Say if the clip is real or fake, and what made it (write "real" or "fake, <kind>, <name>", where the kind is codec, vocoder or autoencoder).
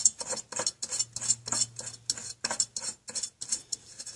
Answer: real